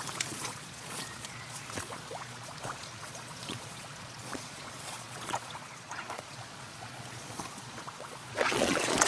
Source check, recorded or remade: remade